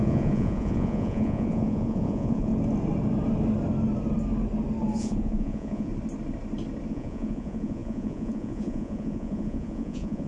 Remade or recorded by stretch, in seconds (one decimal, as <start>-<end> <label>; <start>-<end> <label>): 0.0-2.5 remade; 2.5-5.0 recorded; 5.0-5.9 remade; 5.9-6.9 recorded; 6.9-10.3 remade